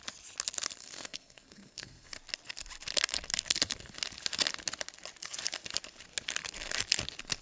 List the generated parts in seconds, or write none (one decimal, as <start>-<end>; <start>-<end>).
0.8-2.1